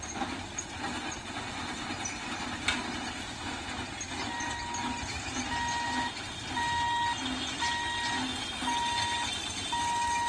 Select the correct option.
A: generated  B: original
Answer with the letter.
B